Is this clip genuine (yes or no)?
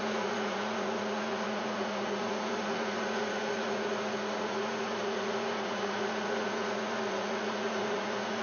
no